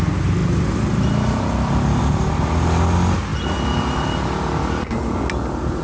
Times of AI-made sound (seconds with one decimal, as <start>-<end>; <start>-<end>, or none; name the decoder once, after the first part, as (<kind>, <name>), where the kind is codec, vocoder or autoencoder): none

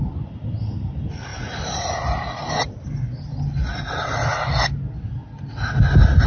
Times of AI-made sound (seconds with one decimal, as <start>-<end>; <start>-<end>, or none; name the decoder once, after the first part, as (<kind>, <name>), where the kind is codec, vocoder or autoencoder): none